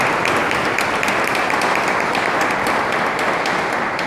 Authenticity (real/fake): real